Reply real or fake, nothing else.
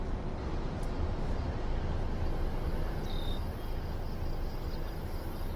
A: real